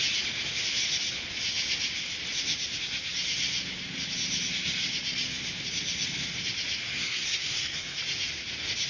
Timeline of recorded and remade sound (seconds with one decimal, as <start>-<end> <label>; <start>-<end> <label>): 0.0-6.8 recorded; 6.8-8.0 remade; 8.0-8.9 recorded